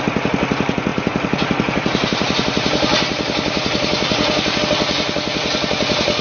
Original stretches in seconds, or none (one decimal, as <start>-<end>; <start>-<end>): 0.0-0.9; 4.6-6.2